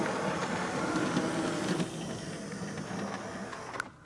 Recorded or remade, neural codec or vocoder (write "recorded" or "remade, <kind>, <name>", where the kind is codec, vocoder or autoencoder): recorded